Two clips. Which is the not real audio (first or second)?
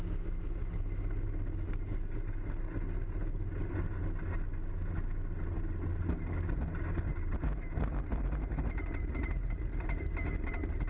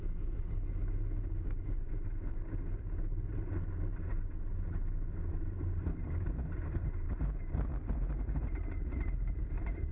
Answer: second